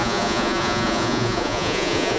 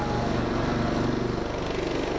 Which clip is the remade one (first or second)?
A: first